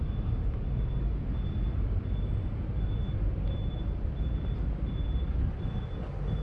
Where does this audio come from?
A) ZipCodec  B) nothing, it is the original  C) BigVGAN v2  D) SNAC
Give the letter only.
B